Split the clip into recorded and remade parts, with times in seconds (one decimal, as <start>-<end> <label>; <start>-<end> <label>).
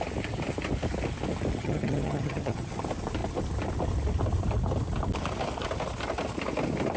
0.0-1.6 recorded; 1.6-2.7 remade; 2.7-7.0 recorded